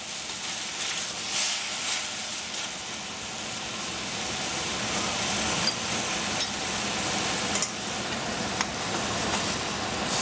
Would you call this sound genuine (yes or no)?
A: yes